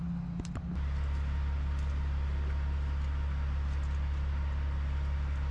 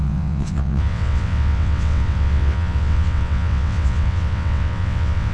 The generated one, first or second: second